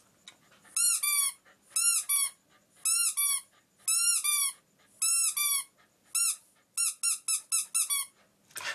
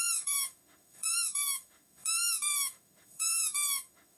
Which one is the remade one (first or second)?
second